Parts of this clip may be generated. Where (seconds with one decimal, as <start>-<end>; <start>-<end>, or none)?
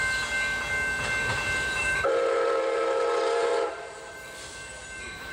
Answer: 1.8-5.3